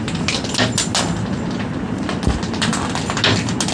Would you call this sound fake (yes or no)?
no